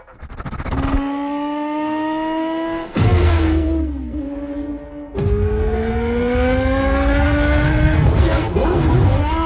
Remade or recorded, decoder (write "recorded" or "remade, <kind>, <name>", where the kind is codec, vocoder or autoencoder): remade, codec, SNAC